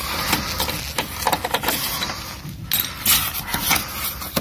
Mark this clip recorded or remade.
recorded